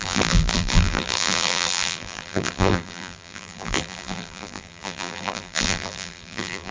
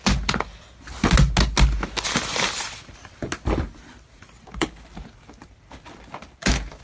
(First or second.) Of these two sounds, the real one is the second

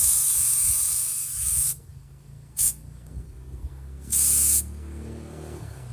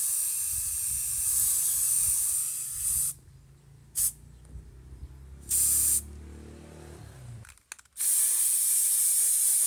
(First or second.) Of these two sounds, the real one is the second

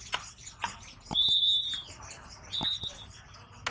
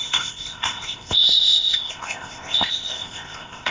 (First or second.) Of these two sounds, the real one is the first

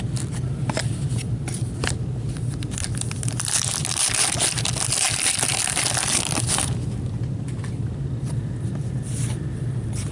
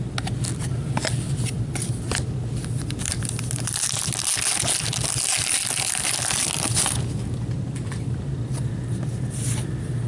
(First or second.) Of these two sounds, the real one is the second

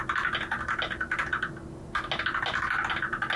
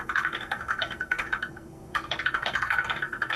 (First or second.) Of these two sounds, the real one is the first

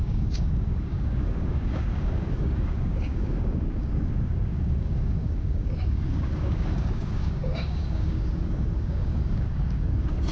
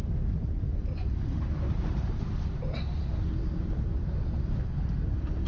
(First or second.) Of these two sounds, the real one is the second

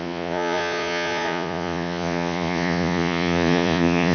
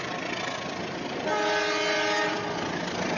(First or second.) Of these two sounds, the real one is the second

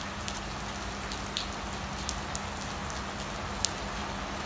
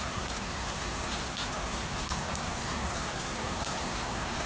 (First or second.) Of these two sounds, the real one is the first